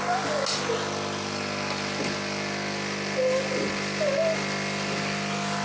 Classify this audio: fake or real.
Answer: real